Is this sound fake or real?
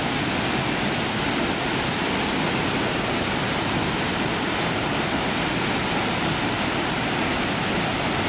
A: real